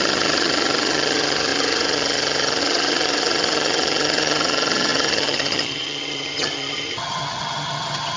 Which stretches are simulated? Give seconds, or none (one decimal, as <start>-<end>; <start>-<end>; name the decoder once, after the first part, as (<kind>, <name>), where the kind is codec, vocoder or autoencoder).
0.0-8.2 (vocoder, HiFi-GAN)